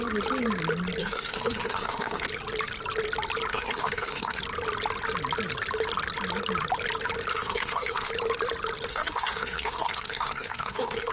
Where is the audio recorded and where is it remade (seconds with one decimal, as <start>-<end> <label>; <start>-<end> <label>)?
0.0-1.0 recorded; 1.0-2.3 remade; 2.3-3.5 recorded; 3.5-4.4 remade; 4.4-7.3 recorded; 7.3-8.1 remade; 8.1-8.9 recorded; 8.9-11.1 remade